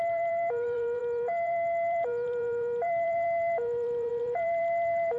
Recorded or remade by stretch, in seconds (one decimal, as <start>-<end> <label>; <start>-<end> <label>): 0.0-5.2 remade